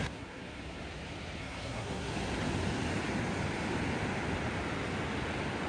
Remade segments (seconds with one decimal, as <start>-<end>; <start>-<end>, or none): 0.0-0.8; 1.4-2.1